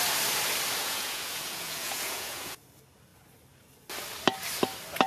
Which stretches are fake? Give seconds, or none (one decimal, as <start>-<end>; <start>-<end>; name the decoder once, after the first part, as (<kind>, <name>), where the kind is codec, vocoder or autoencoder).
0.8-2.6 (vocoder, Vocos)